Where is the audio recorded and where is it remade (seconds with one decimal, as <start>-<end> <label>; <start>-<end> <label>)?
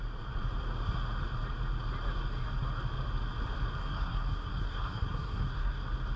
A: 0.0-3.8 recorded; 3.8-5.8 remade; 5.8-6.2 recorded